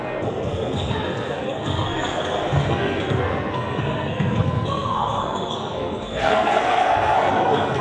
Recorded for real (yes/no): no